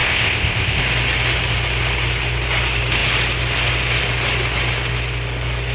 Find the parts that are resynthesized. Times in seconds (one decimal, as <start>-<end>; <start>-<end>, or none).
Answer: 0.0-0.8